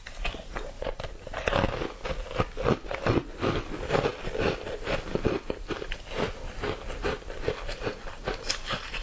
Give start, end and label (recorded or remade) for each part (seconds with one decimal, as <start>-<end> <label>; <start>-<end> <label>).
0.0-9.0 recorded